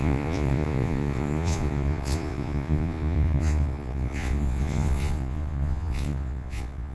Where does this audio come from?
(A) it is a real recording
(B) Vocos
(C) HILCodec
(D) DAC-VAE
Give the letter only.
B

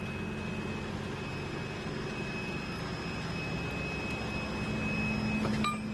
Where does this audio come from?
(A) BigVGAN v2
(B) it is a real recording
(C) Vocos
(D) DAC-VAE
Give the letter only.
B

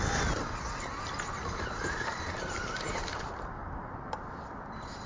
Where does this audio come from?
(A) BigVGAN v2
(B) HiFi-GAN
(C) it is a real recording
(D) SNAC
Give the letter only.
C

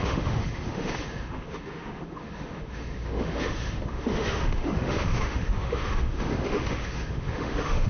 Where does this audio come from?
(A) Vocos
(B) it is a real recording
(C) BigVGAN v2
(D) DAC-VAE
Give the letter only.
D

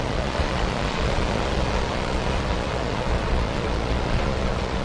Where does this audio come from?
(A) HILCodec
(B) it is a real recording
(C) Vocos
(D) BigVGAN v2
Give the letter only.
C